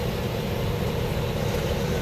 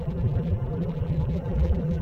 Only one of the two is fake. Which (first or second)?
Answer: second